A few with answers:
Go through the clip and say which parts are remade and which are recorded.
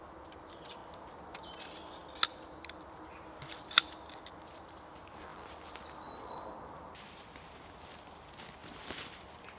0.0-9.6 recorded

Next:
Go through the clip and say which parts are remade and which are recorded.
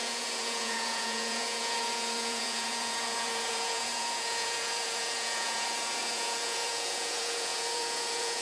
0.0-8.4 remade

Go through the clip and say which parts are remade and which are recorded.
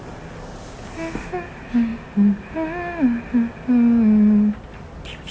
0.0-5.3 recorded